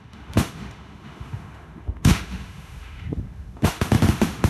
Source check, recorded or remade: remade